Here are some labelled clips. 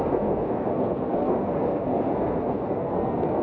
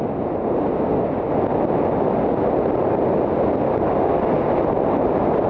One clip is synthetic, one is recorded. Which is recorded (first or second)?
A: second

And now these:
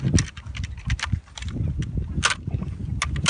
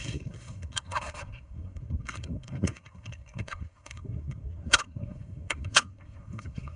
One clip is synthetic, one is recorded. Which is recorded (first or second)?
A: first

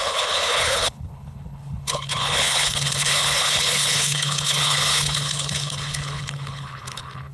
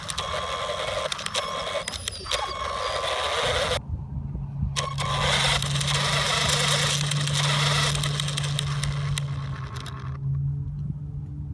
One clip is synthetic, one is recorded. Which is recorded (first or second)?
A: second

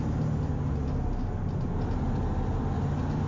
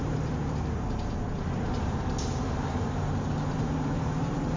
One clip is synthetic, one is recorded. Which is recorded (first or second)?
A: first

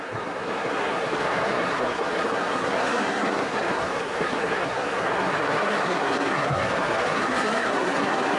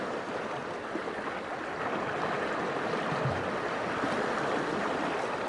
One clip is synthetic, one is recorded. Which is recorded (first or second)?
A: second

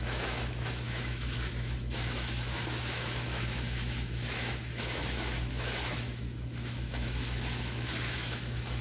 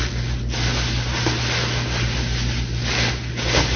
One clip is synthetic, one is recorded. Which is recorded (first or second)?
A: second